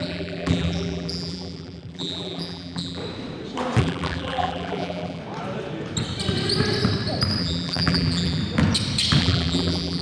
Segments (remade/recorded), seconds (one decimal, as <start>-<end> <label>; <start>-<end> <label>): 0.0-3.0 remade; 3.0-3.8 recorded; 3.8-5.2 remade; 5.2-7.4 recorded; 7.4-8.4 remade; 8.4-9.2 recorded; 9.2-10.0 remade